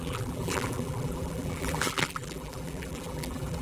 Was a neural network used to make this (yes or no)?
yes